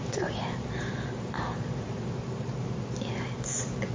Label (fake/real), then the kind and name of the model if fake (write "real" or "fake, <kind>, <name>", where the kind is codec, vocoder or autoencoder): real